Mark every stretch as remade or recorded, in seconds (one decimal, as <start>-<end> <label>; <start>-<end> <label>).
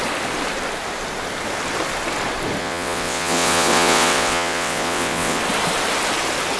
0.0-2.6 recorded; 2.6-5.4 remade; 5.4-6.6 recorded